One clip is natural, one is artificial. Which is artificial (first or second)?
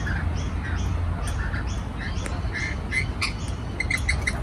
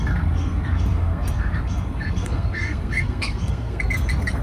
second